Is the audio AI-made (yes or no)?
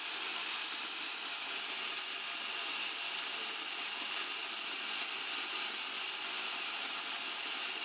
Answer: no